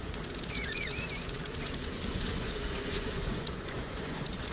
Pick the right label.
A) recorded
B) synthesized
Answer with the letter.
B